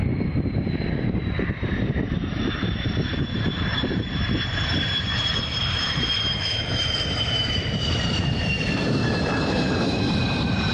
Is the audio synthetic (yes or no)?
yes